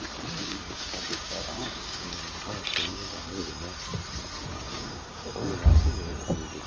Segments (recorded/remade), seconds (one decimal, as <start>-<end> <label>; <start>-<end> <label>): 0.0-0.4 recorded; 0.4-2.2 remade; 2.2-2.9 recorded; 2.9-3.4 remade; 3.4-4.5 recorded; 4.5-5.3 remade; 5.3-6.7 recorded